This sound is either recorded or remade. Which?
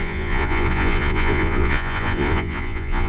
remade